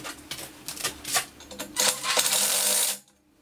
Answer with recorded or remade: recorded